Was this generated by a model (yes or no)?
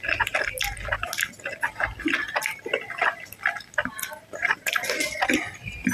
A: no